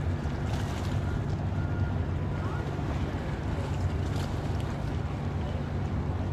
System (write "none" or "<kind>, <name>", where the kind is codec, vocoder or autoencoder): none